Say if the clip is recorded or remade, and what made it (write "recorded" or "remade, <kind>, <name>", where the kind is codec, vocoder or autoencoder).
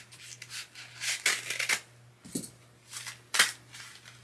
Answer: recorded